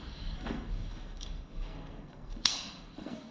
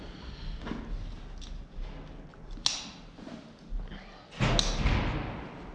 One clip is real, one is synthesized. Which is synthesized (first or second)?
first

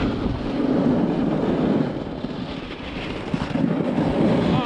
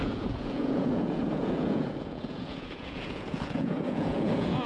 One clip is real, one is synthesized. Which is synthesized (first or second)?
second